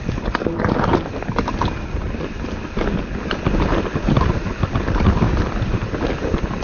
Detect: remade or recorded recorded